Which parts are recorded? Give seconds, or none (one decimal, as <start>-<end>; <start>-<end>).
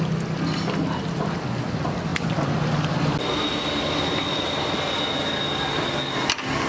0.0-6.7